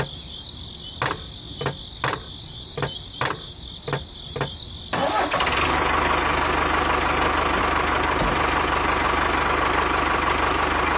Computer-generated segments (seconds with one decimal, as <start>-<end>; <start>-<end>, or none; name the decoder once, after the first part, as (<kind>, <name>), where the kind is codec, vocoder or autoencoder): none